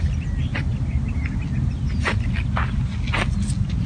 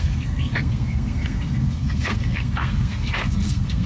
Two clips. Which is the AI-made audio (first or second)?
second